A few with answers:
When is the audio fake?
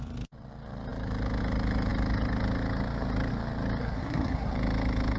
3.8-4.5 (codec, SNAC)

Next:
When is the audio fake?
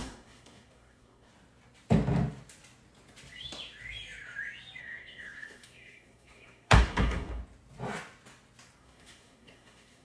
0.0-1.3 (codec, SNAC); 4.8-7.4; 8.8-10.0